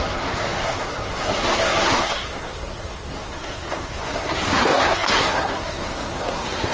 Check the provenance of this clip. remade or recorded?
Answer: remade